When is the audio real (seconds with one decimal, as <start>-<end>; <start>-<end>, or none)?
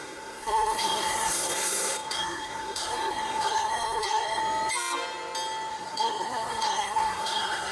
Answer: 4.4-5.7